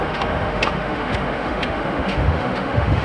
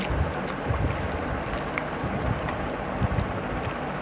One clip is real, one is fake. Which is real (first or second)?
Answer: second